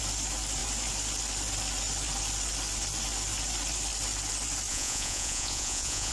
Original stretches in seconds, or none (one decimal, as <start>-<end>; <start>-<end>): 0.0-4.7